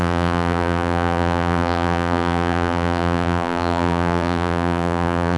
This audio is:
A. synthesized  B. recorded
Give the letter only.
A